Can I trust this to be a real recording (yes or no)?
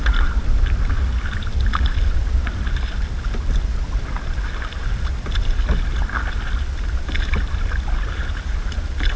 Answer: yes